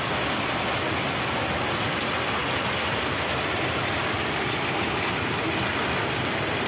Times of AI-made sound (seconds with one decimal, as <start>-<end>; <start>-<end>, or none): none